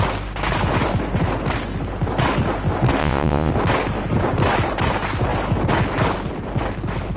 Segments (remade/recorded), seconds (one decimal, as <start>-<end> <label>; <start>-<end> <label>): 0.0-3.0 recorded; 3.0-3.5 remade; 3.5-7.2 recorded